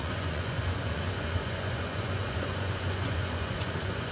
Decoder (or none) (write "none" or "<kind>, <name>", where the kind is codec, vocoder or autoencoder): vocoder, Vocos